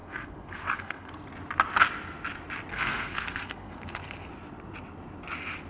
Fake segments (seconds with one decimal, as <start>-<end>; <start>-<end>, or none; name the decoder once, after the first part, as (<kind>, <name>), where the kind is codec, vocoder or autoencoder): 0.0-1.1 (codec, SNAC); 2.7-4.3